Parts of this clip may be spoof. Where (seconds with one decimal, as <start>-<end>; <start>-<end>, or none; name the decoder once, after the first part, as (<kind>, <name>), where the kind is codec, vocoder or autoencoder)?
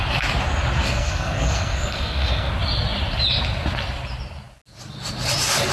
0.8-2.5 (codec, SNAC)